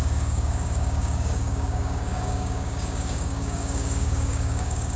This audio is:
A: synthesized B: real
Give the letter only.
A